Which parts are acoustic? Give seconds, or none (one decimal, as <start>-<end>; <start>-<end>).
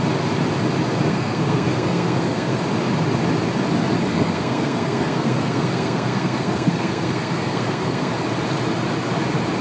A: 0.0-1.1; 2.6-4.1; 8.1-9.6